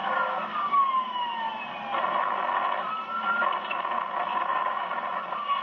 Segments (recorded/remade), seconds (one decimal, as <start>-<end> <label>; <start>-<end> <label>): 0.0-0.9 remade; 0.9-4.3 recorded; 4.3-4.9 remade; 4.9-5.6 recorded